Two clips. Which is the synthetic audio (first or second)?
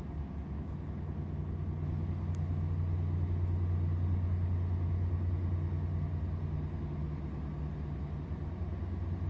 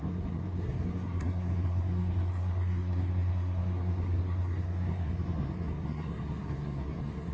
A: second